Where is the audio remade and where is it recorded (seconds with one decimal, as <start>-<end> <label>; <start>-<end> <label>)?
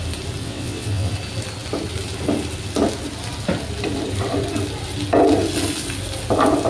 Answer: 0.0-0.4 recorded; 0.4-1.1 remade; 1.1-6.7 recorded